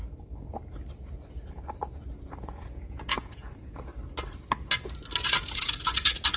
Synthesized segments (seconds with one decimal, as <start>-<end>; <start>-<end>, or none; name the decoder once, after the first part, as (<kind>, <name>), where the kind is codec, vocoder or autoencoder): 2.1-3.9 (vocoder, Vocos); 5.4-6.4